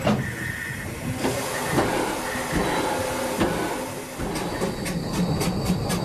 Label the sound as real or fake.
real